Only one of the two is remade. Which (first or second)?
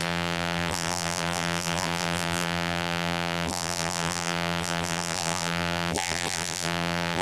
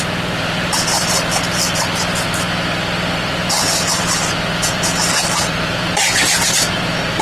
first